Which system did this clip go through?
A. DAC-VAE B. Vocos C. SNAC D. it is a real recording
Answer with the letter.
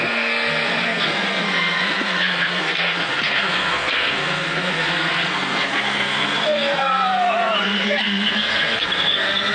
C